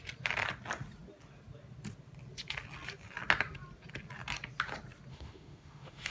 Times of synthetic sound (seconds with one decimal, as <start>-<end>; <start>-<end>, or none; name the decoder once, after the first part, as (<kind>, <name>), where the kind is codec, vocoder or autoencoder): 5.1-6.1 (autoencoder, DAC-VAE)